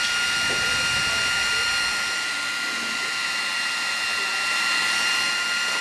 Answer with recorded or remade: recorded